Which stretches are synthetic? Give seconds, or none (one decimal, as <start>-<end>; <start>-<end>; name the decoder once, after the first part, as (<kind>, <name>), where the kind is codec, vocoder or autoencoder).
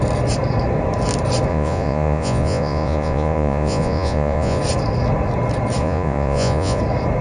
1.5-4.6 (vocoder, Vocos); 5.8-6.8